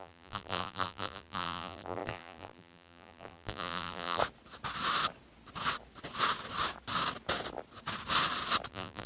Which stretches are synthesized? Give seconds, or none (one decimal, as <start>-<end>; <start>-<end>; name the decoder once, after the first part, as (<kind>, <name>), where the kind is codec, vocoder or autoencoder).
0.0-4.2 (vocoder, BigVGAN v2); 8.7-9.1